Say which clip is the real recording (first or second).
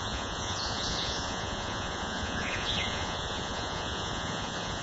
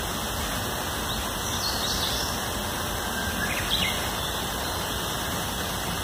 second